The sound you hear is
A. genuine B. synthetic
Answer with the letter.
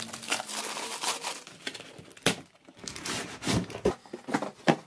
A